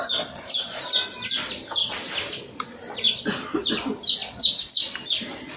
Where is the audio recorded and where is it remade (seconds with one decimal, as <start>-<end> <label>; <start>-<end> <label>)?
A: 0.0-5.6 recorded